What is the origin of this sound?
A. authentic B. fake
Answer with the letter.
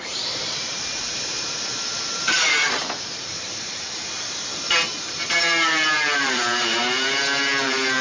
B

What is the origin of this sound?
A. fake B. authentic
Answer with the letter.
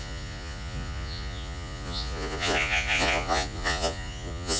A